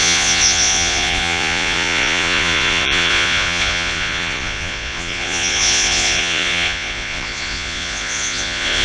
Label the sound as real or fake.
fake